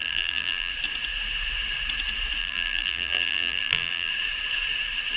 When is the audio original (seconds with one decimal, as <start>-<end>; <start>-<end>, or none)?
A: 0.7-2.4; 4.1-5.2